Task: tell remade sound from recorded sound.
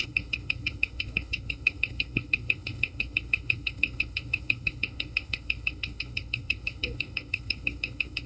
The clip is remade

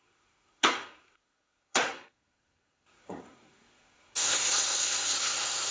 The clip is remade